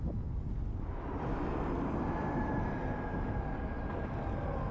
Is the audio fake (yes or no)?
no